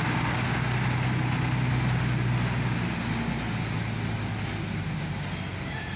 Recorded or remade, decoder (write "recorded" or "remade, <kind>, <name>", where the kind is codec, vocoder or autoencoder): recorded